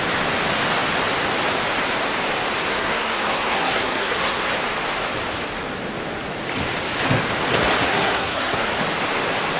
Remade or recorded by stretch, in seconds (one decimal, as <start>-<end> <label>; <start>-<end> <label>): 0.0-2.7 recorded; 2.7-4.5 remade; 4.5-7.9 recorded; 7.9-8.7 remade; 8.7-9.6 recorded

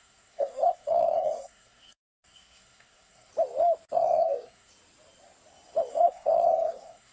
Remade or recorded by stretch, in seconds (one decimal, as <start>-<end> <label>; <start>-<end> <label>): 0.0-3.3 remade; 3.3-3.9 recorded; 3.9-4.7 remade; 4.7-5.9 recorded; 5.9-7.1 remade

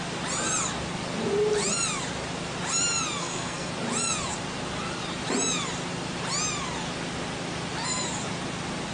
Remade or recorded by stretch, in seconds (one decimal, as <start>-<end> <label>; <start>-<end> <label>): 0.0-3.2 recorded; 3.2-3.7 remade; 3.7-8.9 recorded

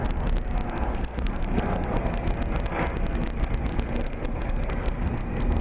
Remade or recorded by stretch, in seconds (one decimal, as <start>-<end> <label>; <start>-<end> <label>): 0.0-0.9 recorded; 0.9-2.3 remade; 2.3-3.7 recorded; 3.7-5.6 remade

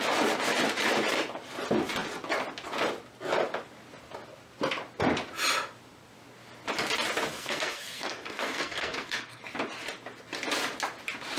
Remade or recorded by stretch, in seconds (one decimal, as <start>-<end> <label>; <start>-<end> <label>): 0.0-7.3 recorded; 7.3-9.4 remade; 9.4-11.4 recorded

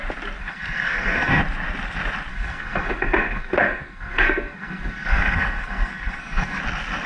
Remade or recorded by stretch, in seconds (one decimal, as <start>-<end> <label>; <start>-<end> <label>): 0.0-0.4 recorded; 0.4-1.4 remade; 1.4-2.3 recorded; 2.3-6.6 remade; 6.6-7.1 recorded